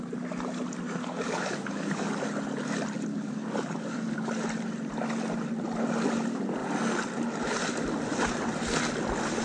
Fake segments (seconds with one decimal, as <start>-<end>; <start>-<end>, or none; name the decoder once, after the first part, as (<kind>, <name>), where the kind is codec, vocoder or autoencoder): 1.0-2.1 (codec, DAC); 3.1-4.3